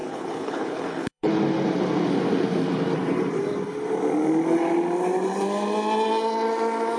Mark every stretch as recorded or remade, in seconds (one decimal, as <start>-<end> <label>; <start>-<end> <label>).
0.0-1.3 remade; 1.3-7.0 recorded